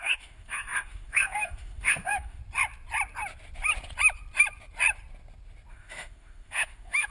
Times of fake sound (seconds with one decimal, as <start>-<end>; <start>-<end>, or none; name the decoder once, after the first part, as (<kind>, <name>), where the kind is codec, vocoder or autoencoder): 0.0-2.4 (autoencoder, DAC-VAE); 5.7-7.1